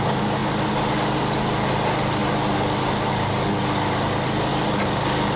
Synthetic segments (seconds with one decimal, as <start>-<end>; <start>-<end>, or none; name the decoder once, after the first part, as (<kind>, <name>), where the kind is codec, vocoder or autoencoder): none